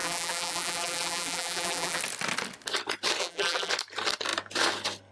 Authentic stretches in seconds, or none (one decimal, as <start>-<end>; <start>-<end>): 2.0-3.2; 3.7-5.1